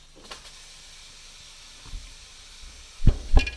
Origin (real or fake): real